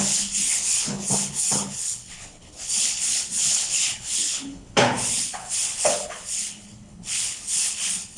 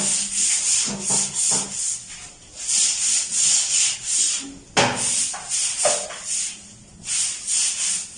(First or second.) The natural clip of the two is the second